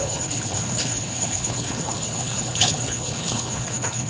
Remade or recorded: remade